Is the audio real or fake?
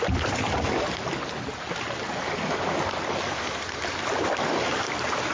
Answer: real